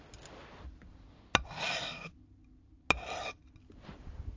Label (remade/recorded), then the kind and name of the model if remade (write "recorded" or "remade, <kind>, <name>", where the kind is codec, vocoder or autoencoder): recorded